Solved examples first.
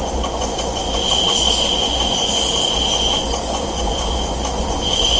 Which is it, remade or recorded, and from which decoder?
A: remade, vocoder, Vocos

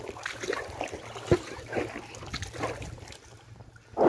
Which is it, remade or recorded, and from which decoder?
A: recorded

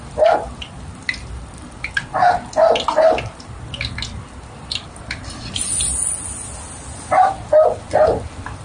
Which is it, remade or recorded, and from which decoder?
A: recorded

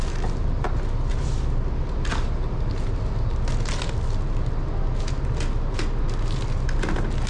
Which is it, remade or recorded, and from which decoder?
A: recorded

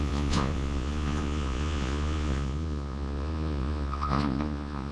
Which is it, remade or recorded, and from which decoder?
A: remade, vocoder, Vocos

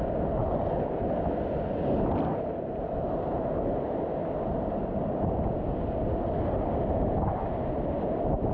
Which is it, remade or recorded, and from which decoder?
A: recorded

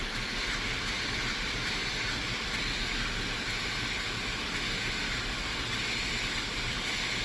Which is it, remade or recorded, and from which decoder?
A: recorded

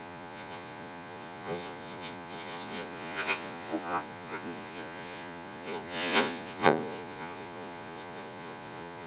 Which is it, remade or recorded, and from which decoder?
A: remade, vocoder, Vocos